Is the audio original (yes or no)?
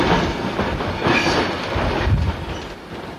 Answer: yes